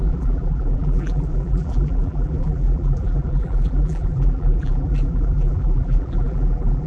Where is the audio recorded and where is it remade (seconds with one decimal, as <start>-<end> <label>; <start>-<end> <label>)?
0.0-6.9 remade